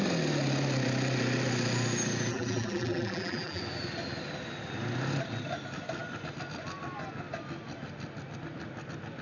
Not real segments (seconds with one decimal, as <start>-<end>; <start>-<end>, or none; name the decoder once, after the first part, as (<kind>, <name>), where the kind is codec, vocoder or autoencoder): 2.3-3.6 (vocoder, BigVGAN v2)